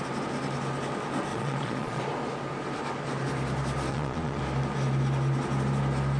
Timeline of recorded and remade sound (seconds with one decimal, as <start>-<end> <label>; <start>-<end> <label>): 0.0-1.3 recorded; 1.3-2.0 remade; 2.0-3.9 recorded; 3.9-4.4 remade; 4.4-6.2 recorded